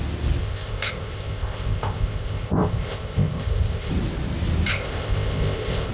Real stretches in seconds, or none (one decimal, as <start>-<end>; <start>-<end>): 0.0-0.4; 3.9-4.7